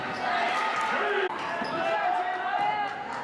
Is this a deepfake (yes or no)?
no